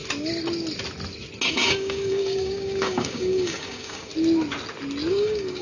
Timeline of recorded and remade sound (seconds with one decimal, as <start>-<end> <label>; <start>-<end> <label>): 0.0-1.5 recorded; 1.5-4.1 remade; 4.1-5.1 recorded; 5.1-5.6 remade